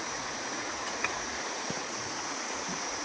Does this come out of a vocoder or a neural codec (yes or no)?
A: yes